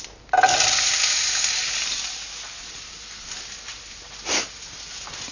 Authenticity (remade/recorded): recorded